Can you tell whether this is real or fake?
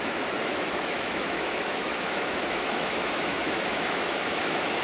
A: fake